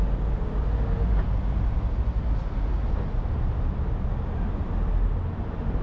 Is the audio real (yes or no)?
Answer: yes